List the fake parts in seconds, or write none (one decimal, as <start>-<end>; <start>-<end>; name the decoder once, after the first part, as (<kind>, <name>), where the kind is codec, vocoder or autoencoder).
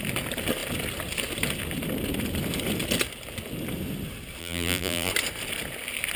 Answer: 4.4-5.1 (vocoder, BigVGAN v2)